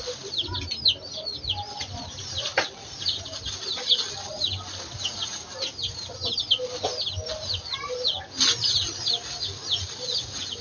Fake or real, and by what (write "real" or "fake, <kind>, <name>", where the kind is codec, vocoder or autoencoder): real